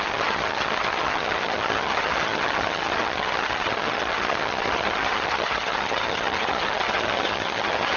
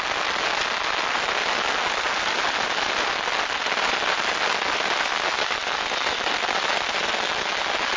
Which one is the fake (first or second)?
first